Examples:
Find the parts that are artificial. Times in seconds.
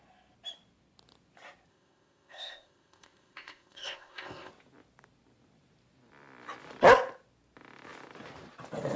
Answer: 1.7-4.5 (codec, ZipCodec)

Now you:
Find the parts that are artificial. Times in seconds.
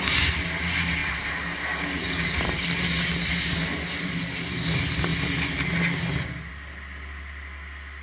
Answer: none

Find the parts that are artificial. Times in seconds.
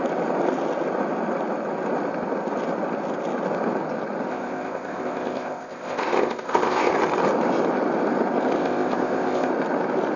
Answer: 4.3-6.9 (codec, ZipCodec); 8.6-9.5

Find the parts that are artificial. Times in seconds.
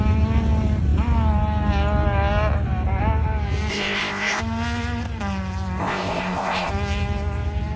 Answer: 3.7-4.4 (codec, ZipCodec); 5.8-6.7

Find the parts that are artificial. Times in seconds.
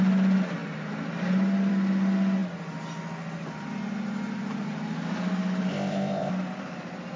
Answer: 5.7-6.3 (codec, ZipCodec)